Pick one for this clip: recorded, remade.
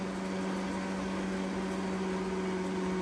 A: recorded